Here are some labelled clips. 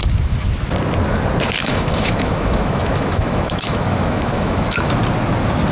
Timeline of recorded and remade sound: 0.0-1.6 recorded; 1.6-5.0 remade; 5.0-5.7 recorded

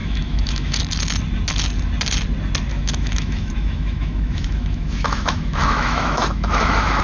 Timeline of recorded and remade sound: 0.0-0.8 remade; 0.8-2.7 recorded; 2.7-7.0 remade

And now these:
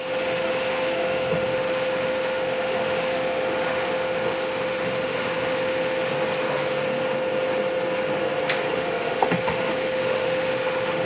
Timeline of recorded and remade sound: 0.0-6.1 remade; 6.1-8.7 recorded; 8.7-11.1 remade